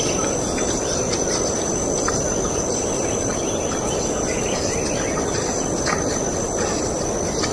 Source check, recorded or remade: recorded